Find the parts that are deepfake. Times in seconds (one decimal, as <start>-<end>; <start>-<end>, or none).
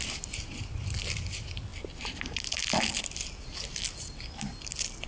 none